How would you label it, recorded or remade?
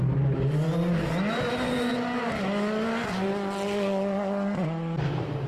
recorded